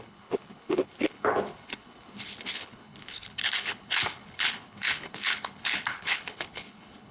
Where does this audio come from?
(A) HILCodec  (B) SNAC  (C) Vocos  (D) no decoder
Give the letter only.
A